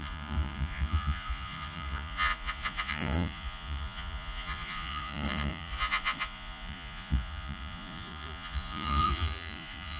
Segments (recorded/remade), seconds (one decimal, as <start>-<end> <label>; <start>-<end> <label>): 0.0-10.0 remade